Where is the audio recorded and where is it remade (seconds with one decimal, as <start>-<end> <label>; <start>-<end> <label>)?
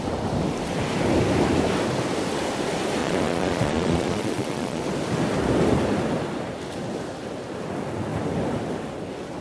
0.0-3.0 recorded; 3.0-4.8 remade; 4.8-9.4 recorded